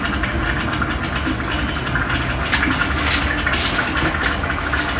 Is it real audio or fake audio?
real